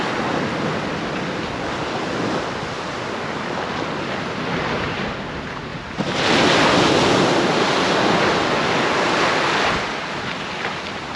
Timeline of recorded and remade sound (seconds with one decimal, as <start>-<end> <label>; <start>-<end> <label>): 0.0-5.7 recorded; 5.7-6.4 remade; 6.4-11.2 recorded